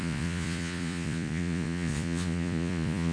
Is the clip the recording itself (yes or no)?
no